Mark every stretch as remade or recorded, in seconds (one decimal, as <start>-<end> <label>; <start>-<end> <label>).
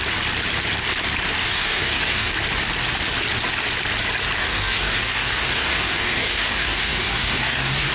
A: 0.0-1.4 recorded; 1.4-2.3 remade; 2.3-4.4 recorded; 4.4-7.9 remade